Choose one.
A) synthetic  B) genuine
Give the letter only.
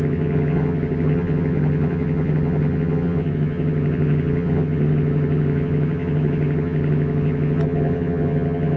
A